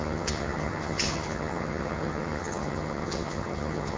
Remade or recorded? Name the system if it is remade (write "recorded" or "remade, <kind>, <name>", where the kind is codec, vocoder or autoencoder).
remade, vocoder, HiFi-GAN